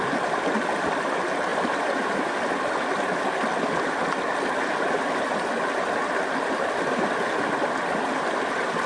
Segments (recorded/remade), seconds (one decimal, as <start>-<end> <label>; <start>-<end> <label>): 0.0-1.5 recorded; 1.5-2.3 remade; 2.3-8.9 recorded